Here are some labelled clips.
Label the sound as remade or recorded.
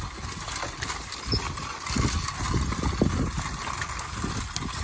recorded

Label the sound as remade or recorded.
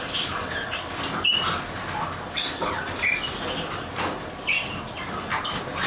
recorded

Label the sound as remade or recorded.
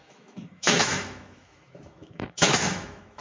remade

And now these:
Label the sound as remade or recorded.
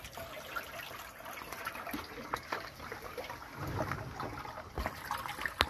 recorded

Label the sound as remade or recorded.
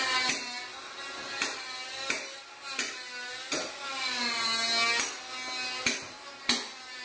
recorded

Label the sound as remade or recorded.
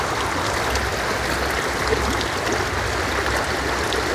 recorded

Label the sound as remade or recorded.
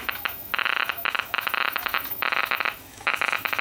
remade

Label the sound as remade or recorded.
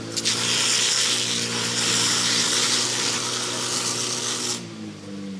recorded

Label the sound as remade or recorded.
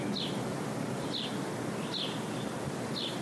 recorded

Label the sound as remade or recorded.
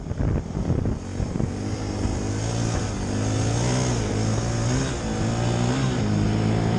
recorded